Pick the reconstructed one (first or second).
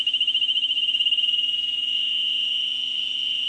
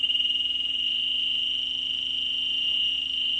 first